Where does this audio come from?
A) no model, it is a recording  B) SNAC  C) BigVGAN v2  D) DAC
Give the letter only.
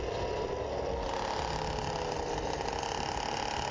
A